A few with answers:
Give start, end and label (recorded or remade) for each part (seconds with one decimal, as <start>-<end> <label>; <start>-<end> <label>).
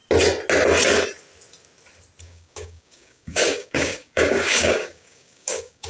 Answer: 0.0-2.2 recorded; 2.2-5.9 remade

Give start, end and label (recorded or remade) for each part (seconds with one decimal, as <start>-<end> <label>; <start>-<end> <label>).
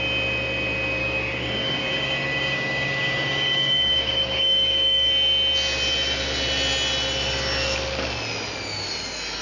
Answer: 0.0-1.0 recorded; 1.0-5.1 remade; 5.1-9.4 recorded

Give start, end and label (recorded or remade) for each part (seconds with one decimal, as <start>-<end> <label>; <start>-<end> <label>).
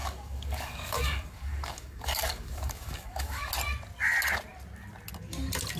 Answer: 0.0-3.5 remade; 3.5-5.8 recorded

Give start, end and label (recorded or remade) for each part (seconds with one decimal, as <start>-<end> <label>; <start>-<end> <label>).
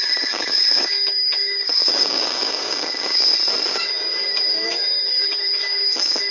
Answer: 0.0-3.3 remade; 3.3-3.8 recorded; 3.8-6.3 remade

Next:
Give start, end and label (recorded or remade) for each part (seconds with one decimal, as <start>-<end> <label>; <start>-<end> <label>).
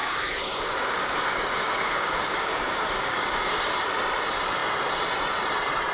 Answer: 0.0-3.5 remade; 3.5-5.9 recorded